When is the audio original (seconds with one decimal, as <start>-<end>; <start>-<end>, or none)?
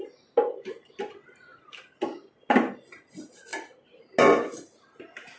0.0-5.4